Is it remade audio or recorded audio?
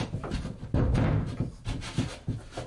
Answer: recorded